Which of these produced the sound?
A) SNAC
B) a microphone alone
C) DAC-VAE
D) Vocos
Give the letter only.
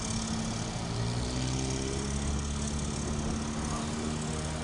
B